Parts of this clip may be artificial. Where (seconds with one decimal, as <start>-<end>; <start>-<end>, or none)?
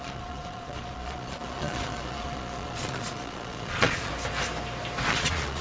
0.0-4.1; 5.1-5.6